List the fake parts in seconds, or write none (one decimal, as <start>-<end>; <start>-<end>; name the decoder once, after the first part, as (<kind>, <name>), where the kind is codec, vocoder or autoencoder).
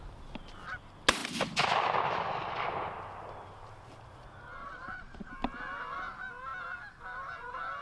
4.6-5.3 (vocoder, Vocos)